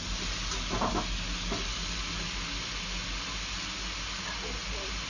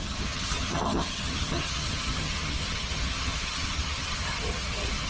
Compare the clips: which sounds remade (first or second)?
second